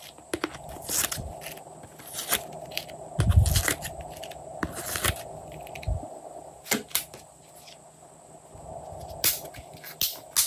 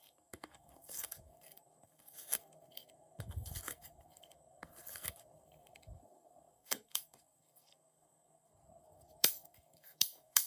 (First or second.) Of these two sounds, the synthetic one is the second